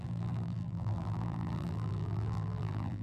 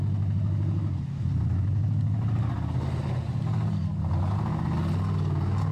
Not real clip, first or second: first